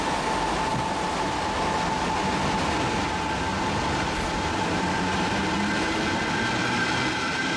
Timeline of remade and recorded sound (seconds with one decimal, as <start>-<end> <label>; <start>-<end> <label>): 0.0-7.6 recorded